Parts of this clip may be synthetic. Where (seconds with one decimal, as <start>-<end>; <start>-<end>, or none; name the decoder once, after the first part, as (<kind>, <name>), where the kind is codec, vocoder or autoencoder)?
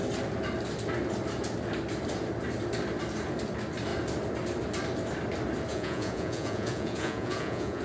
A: 5.7-7.8 (vocoder, Vocos)